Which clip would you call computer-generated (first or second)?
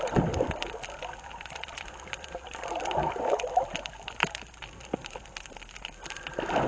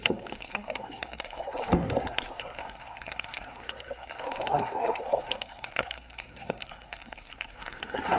second